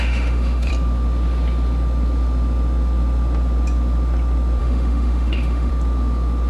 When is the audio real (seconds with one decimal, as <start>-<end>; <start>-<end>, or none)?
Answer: 0.7-4.6; 5.7-6.5